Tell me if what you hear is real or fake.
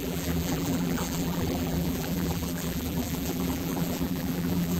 fake